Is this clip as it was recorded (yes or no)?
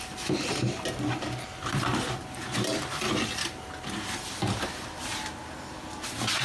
yes